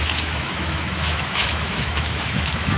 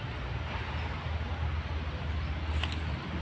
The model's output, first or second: first